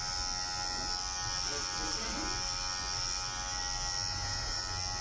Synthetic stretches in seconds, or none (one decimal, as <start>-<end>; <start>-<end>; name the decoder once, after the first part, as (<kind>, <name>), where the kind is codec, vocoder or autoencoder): 4.1-4.6 (vocoder, Vocos)